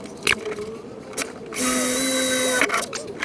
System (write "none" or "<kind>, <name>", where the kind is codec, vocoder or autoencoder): none